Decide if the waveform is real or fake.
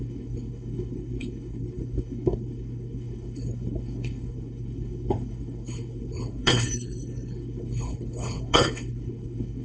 fake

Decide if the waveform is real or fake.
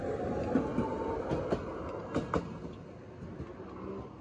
real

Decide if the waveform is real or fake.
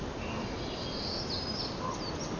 real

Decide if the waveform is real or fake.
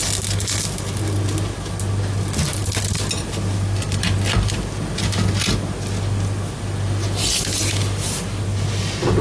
real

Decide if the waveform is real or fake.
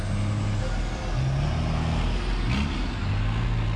real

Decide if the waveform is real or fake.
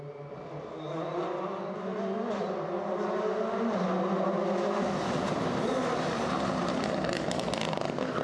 real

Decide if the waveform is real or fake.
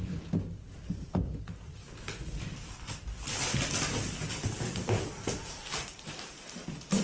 real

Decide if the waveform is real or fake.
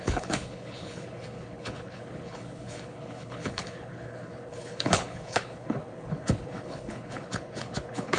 fake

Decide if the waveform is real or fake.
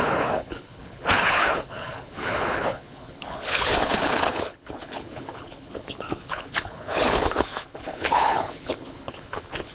fake